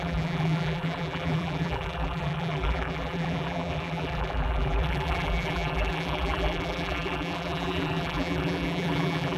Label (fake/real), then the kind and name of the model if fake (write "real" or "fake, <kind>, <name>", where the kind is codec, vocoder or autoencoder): fake, vocoder, BigVGAN v2